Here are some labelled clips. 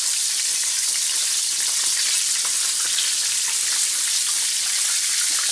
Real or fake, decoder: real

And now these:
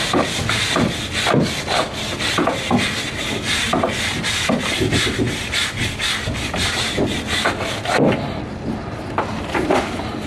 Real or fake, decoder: real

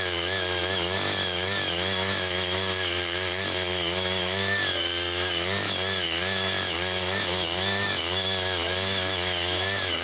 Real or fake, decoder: fake, autoencoder, DAC-VAE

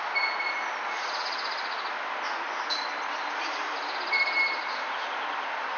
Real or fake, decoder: real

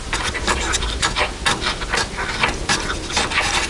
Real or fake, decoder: real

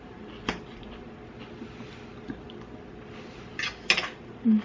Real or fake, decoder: real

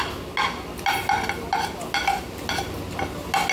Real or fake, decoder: real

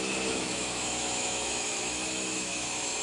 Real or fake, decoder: fake, autoencoder, DAC-VAE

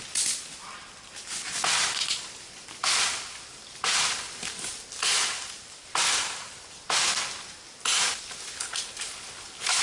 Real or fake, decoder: real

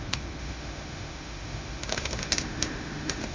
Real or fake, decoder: fake, autoencoder, DAC-VAE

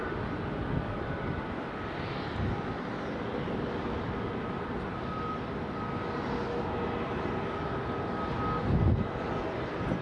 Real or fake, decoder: real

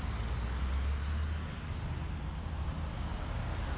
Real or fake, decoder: real